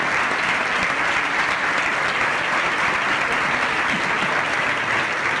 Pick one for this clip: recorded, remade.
recorded